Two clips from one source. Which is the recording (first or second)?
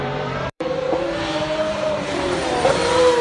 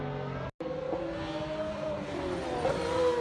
second